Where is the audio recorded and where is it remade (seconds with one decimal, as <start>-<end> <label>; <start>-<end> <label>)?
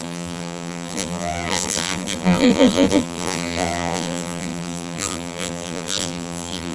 0.0-6.7 remade